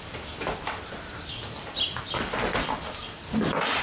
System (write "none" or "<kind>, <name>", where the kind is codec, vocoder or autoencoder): none